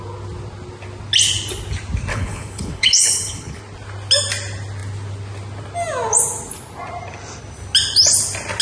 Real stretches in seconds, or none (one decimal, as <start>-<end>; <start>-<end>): 0.0-2.1; 3.6-8.6